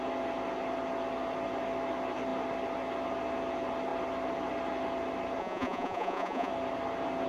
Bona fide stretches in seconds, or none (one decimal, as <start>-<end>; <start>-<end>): 0.0-5.4; 6.5-7.3